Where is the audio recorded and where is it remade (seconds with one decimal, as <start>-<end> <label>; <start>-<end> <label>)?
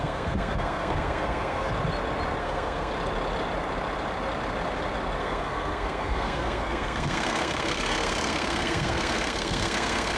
0.0-1.7 remade; 1.7-2.4 recorded; 2.4-2.9 remade; 2.9-5.2 recorded; 5.2-10.2 remade